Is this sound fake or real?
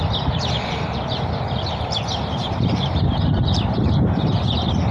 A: fake